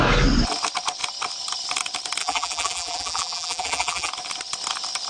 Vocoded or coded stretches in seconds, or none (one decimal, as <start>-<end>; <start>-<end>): 2.2-4.1